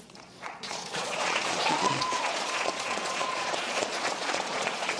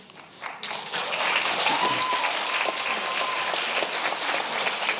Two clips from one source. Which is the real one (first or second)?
second